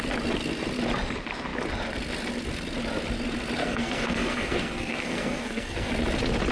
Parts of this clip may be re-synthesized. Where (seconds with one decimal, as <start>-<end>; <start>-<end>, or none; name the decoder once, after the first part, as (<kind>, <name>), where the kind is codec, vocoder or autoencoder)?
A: 3.6-5.9 (codec, SNAC)